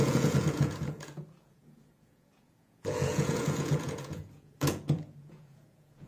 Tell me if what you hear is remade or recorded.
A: remade